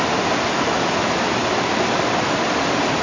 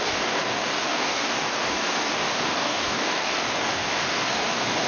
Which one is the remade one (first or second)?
second